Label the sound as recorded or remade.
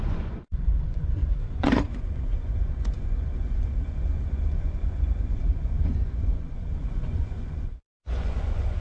remade